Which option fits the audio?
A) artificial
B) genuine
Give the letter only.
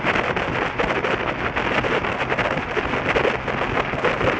B